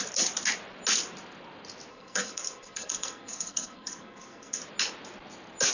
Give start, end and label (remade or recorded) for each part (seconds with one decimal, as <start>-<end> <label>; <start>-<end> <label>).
0.0-1.9 recorded; 1.9-4.6 remade; 4.6-5.7 recorded